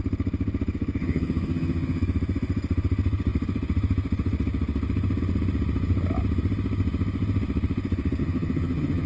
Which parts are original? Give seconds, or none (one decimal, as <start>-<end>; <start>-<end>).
0.0-1.0; 2.0-8.2